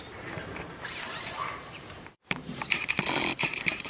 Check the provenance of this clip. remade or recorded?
remade